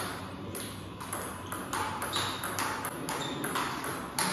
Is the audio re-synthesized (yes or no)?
no